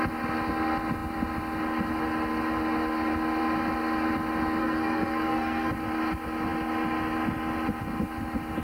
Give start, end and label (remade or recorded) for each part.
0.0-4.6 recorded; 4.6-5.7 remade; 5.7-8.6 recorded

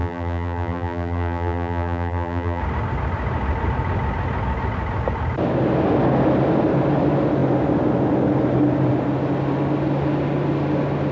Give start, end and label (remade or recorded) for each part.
0.0-2.6 remade; 2.6-11.1 recorded

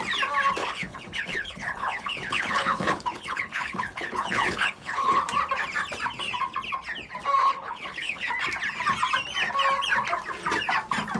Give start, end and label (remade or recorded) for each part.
0.0-0.6 recorded; 0.6-5.2 remade; 5.2-7.4 recorded; 7.4-8.3 remade; 8.3-11.2 recorded

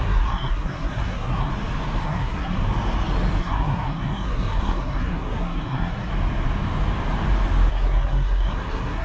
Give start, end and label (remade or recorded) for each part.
0.0-1.5 remade; 1.5-2.0 recorded; 2.0-2.6 remade; 2.6-3.4 recorded; 3.4-6.1 remade; 6.1-7.7 recorded; 7.7-9.0 remade

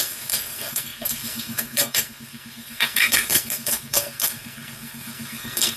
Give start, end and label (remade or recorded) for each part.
0.0-5.8 remade

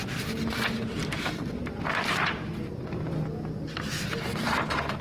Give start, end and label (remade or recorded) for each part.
0.0-5.0 recorded